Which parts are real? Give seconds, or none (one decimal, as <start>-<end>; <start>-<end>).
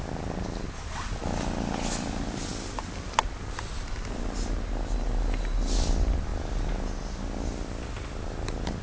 0.0-8.8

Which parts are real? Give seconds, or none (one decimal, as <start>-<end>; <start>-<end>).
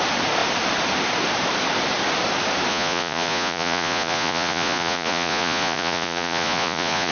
0.0-2.7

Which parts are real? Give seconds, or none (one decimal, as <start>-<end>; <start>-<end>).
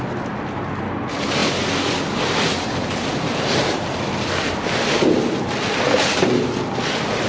0.0-7.3